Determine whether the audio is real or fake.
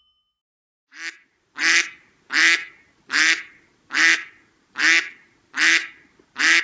real